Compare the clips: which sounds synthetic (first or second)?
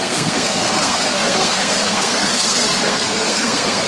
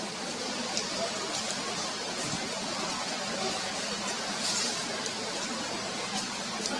first